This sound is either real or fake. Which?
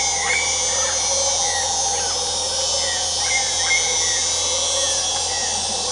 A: real